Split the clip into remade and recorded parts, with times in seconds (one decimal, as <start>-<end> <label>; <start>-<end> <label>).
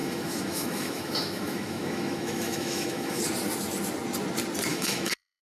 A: 0.0-3.2 remade; 3.2-4.7 recorded; 4.7-5.4 remade